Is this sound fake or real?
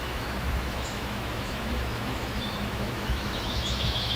fake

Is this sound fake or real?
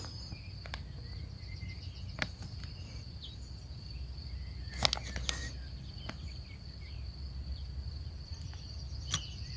real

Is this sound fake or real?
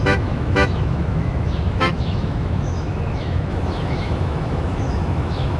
fake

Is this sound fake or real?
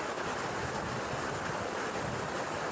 real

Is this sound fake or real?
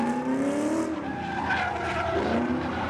real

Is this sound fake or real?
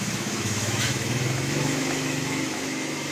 fake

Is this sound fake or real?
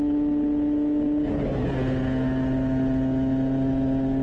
real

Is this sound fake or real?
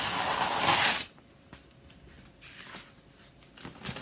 real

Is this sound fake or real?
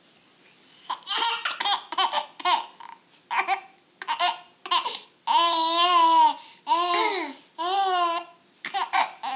real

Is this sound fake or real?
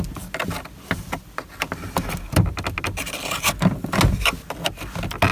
real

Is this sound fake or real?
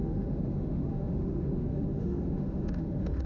fake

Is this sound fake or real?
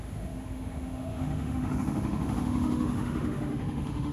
fake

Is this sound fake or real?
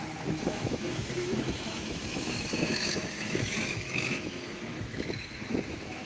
fake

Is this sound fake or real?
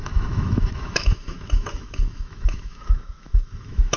fake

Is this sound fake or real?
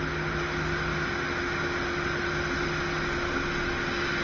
real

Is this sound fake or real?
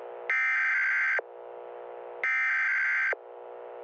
real